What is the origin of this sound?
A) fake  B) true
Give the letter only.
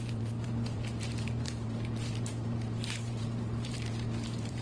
A